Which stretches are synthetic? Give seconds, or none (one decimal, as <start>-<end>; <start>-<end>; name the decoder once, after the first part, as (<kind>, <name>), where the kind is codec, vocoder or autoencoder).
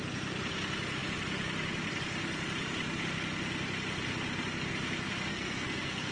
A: 5.3-6.1 (codec, SNAC)